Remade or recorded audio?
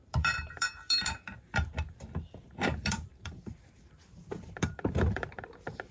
remade